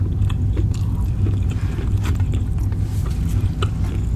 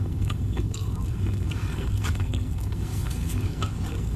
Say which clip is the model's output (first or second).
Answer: second